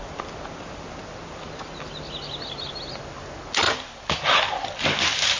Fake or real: real